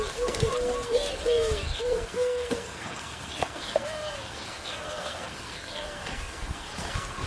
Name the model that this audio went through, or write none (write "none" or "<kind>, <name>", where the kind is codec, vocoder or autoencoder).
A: codec, SNAC